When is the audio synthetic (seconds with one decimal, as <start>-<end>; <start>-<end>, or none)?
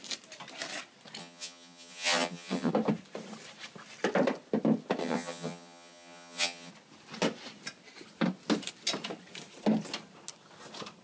1.2-2.7; 5.0-6.7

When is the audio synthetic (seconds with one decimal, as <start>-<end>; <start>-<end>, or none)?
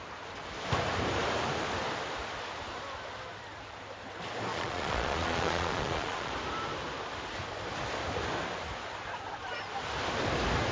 4.5-6.3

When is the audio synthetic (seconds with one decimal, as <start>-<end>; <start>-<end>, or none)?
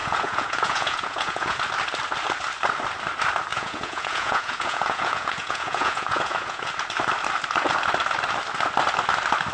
0.0-1.6; 3.5-6.7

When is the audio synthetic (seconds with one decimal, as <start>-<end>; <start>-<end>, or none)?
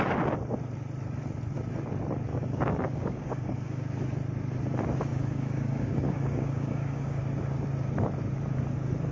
2.3-3.8; 5.1-7.2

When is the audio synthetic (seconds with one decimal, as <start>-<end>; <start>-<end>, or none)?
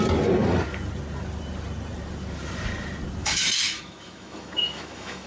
3.2-5.3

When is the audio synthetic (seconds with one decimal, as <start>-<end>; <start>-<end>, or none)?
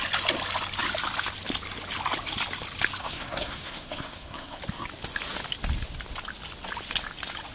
3.0-4.6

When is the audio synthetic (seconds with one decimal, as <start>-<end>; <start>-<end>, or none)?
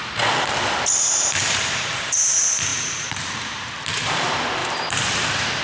1.4-2.3; 2.7-3.7; 4.6-5.6